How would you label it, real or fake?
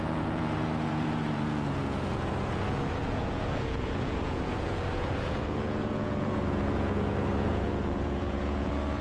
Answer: fake